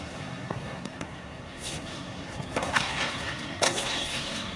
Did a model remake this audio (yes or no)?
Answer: yes